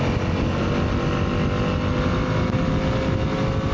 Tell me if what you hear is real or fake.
real